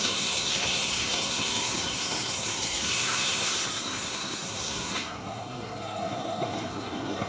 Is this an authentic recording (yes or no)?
no